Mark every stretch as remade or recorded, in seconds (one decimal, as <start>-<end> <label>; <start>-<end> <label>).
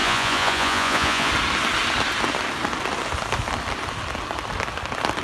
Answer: 0.0-1.3 remade; 1.3-5.2 recorded